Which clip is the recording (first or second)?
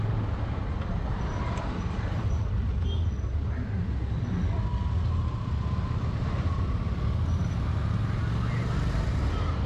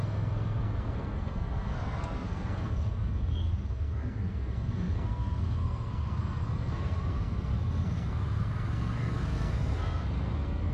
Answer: first